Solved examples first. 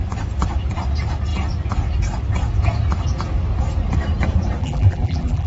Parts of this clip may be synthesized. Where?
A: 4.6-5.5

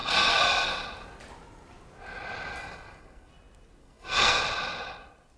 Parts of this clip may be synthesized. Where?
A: 0.0-0.7; 2.5-3.3; 3.8-4.4

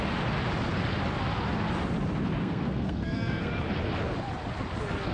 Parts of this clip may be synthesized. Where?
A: 2.4-3.5

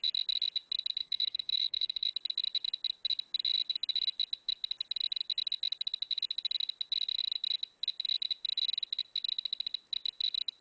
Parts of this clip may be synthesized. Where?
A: 1.0-2.1

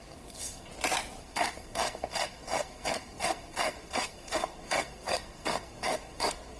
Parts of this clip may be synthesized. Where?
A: 0.0-0.7; 1.2-6.6

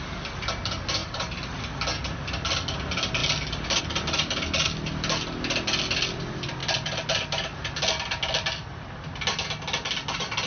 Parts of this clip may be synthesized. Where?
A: 1.0-1.6